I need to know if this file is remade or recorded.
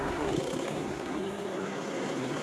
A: remade